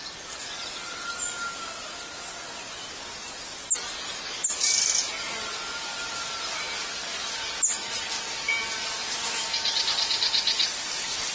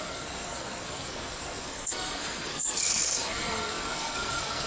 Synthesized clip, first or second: second